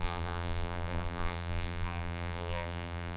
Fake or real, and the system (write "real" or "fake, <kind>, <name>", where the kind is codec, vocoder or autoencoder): fake, vocoder, BigVGAN v2